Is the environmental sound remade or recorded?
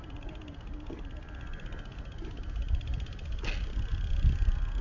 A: recorded